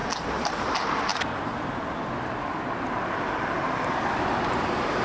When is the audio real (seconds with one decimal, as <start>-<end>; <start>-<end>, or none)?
0.5-5.0